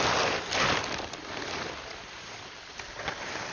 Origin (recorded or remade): recorded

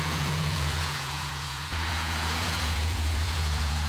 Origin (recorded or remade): remade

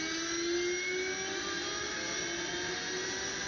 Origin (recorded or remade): recorded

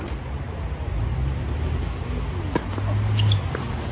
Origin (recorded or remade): recorded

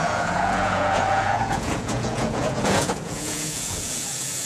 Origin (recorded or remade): remade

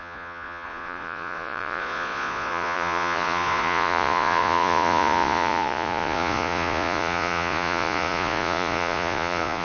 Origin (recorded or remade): remade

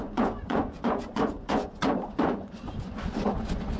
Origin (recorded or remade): remade